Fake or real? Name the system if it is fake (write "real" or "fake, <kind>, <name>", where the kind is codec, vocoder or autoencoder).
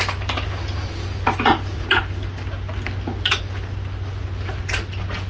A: real